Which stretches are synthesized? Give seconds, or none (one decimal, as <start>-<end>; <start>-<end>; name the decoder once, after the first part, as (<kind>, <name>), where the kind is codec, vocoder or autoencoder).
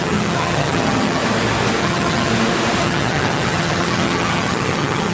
0.0-1.2 (vocoder, HiFi-GAN); 1.8-2.3; 2.8-5.1